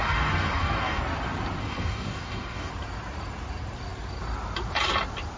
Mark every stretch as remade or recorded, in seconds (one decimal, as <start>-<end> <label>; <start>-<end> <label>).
0.0-1.0 remade; 1.0-1.6 recorded; 1.6-2.7 remade; 2.7-5.4 recorded